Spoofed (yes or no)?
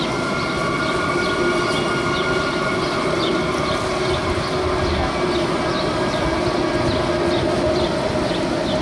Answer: no